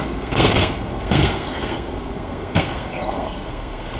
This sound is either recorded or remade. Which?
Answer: remade